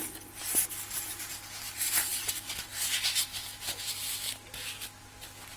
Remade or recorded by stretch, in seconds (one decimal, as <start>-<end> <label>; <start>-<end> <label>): 0.0-5.6 recorded